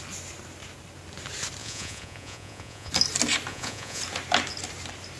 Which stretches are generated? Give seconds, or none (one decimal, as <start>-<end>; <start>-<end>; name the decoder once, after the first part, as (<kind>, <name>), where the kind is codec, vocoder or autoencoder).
1.6-2.9 (vocoder, Vocos); 3.5-4.0